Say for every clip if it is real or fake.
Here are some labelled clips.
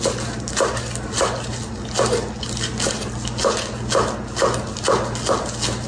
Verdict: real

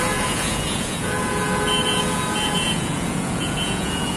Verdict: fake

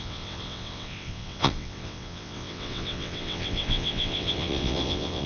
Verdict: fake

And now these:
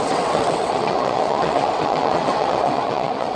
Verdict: fake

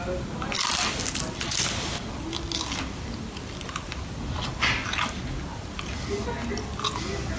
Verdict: real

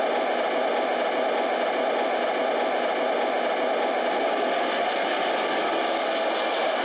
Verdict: real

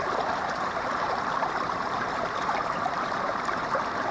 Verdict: fake